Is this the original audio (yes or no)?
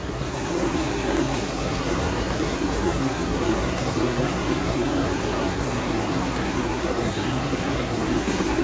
no